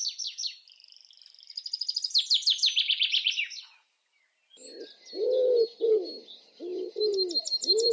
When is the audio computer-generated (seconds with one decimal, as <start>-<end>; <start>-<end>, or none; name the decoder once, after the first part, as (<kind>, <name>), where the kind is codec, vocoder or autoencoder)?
none